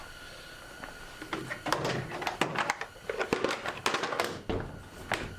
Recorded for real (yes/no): yes